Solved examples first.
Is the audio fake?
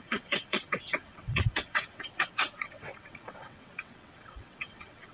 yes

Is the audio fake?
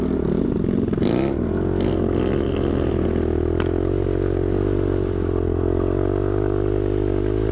no